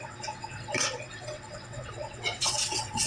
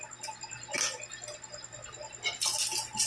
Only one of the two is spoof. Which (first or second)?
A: first